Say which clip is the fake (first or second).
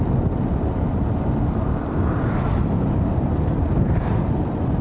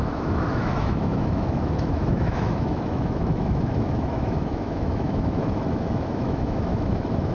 second